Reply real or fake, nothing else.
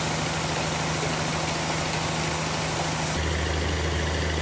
real